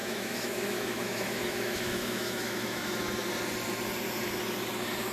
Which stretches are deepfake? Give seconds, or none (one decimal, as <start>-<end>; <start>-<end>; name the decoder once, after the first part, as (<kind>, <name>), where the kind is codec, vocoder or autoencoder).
0.0-3.1 (autoencoder, DAC-VAE)